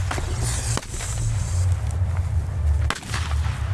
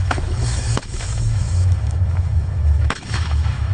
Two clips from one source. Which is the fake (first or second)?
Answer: second